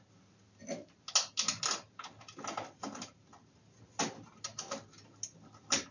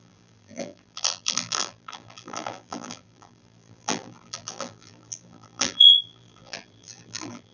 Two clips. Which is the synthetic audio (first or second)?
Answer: second